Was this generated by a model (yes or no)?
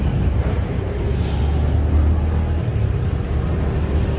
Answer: no